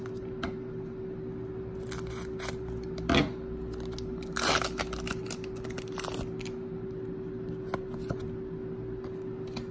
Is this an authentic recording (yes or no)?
yes